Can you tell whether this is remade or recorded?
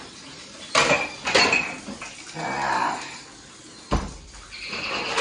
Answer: recorded